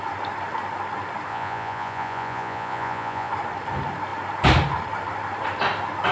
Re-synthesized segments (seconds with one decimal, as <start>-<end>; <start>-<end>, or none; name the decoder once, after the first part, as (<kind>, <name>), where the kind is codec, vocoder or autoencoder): 1.3-3.3 (vocoder, Vocos)

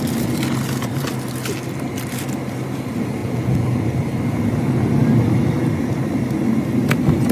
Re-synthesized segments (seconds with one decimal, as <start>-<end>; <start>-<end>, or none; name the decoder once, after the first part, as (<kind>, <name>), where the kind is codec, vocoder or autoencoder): 3.2-3.8 (vocoder, Vocos)

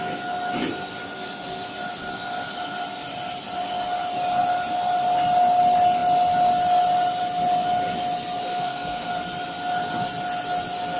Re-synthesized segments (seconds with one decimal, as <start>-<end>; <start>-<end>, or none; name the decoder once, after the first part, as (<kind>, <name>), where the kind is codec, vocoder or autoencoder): 8.5-9.1 (codec, SNAC)

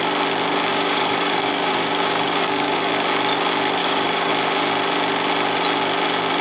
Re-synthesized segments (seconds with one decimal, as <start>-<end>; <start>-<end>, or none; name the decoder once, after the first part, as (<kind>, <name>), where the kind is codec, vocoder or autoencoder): 0.7-2.9 (codec, DAC); 3.8-4.3